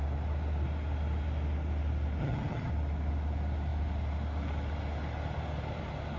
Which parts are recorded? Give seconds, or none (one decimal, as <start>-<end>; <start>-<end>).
0.0-2.2; 2.7-6.2